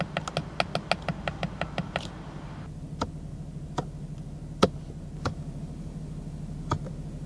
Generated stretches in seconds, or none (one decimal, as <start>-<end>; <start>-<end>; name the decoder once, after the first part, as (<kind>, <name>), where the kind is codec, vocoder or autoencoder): none